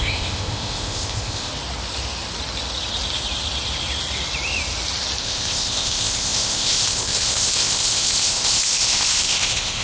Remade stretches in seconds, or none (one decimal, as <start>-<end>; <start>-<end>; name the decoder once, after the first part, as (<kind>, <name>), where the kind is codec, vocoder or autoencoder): 0.0-1.5 (codec, ZipCodec); 5.2-9.8